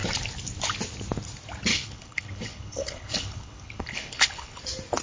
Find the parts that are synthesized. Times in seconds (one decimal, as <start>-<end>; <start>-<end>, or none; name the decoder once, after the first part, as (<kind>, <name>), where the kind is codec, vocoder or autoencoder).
1.7-4.6 (codec, HILCodec)